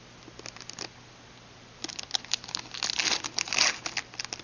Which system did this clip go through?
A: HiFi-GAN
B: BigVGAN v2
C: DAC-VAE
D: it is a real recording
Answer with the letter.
D